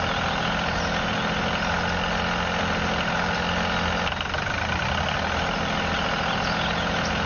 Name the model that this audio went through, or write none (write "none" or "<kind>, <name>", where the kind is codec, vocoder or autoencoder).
none